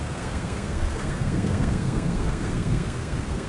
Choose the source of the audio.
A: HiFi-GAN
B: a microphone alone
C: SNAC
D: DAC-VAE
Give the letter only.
C